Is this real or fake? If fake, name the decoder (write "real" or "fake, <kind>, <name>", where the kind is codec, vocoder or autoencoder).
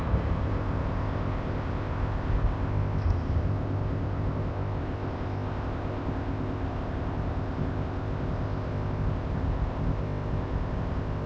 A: fake, codec, ZipCodec